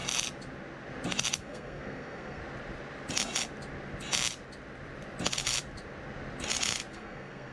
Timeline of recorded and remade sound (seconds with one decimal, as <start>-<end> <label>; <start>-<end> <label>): 0.0-1.4 recorded; 1.4-2.4 remade; 2.4-6.9 recorded; 6.9-7.5 remade